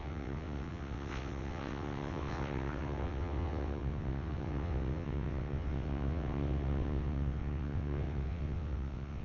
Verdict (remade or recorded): remade